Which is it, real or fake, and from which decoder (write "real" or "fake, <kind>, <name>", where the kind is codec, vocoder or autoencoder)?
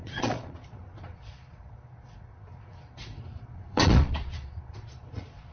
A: fake, vocoder, Vocos